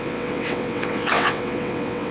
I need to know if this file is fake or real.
fake